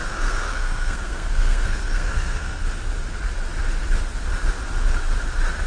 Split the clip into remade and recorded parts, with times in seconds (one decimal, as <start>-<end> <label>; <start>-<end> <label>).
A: 0.0-2.6 remade; 2.6-5.7 recorded